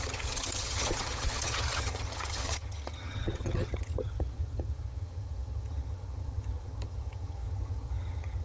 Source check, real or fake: fake